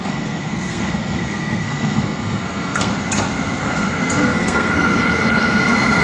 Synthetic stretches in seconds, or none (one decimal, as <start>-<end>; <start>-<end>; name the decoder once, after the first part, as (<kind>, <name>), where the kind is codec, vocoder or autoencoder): 0.0-2.9 (codec, SNAC); 3.6-4.9